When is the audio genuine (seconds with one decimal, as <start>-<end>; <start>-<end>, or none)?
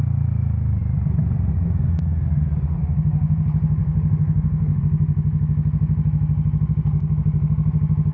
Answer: 0.0-3.8; 4.8-8.1